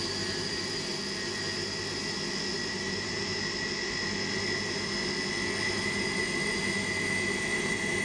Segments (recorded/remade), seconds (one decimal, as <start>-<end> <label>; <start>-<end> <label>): 0.0-0.9 remade; 0.9-2.7 recorded; 2.7-3.3 remade; 3.3-5.8 recorded; 5.8-8.0 remade